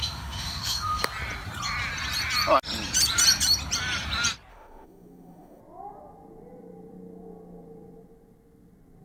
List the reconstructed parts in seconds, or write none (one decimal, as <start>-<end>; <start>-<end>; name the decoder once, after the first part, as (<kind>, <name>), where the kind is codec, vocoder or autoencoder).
0.0-1.0 (autoencoder, DAC-VAE); 4.5-5.6